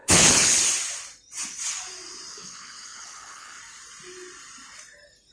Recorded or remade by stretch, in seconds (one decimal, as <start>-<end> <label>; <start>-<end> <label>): 0.0-0.6 remade; 0.6-2.3 recorded; 2.3-3.6 remade; 3.6-5.3 recorded

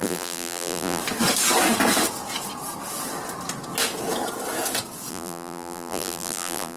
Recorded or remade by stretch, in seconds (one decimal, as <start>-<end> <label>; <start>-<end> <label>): 0.0-1.0 remade; 1.0-5.1 recorded; 5.1-6.8 remade

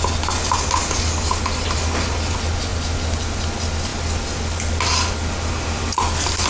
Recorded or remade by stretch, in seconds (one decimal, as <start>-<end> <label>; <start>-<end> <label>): 0.0-6.5 recorded

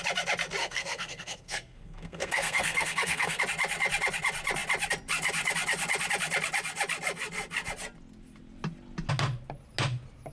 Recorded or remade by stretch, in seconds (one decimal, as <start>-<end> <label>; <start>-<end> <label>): 0.0-0.6 recorded; 0.6-3.4 remade; 3.4-10.3 recorded

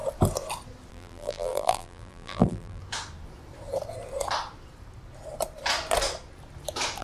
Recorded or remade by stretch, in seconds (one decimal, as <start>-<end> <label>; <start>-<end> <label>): 0.0-0.9 recorded; 0.9-2.8 remade; 2.8-7.0 recorded

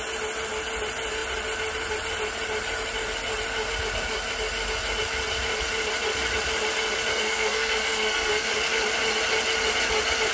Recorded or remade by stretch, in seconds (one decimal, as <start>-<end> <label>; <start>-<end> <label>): 0.0-7.1 recorded; 7.1-8.5 remade; 8.5-10.3 recorded

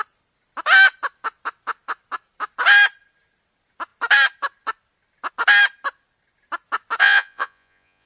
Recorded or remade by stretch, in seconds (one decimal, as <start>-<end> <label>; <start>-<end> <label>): 0.0-7.0 recorded; 7.0-8.1 remade

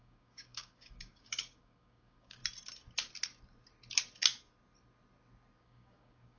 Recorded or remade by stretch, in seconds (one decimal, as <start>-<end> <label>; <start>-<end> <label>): 0.0-2.4 remade; 2.4-5.6 recorded; 5.6-6.4 remade